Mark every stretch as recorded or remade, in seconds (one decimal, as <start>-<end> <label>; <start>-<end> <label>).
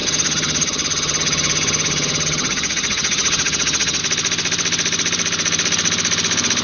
0.0-4.0 remade; 4.0-6.6 recorded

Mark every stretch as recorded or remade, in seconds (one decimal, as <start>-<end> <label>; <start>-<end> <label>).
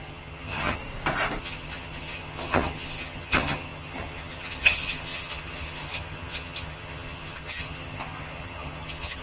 0.0-0.8 remade; 0.8-1.4 recorded; 1.4-9.2 remade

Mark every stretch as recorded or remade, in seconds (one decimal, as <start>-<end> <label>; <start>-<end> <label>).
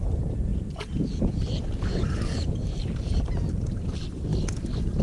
0.0-0.5 recorded; 0.5-3.5 remade; 3.5-5.0 recorded